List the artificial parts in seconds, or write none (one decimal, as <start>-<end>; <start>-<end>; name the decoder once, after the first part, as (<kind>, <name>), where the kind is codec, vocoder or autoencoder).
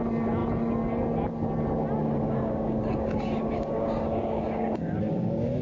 2.0-5.6 (codec, DAC)